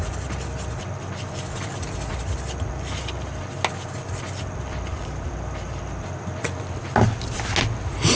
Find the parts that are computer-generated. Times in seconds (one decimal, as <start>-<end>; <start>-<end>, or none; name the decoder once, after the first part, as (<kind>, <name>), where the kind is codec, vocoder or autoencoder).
4.9-5.8 (vocoder, BigVGAN v2)